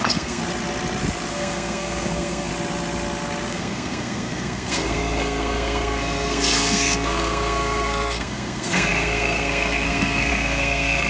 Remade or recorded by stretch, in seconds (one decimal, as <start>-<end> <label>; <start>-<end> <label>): 0.0-0.4 remade; 0.4-1.3 recorded; 1.3-2.5 remade; 2.5-3.5 recorded; 3.5-11.1 remade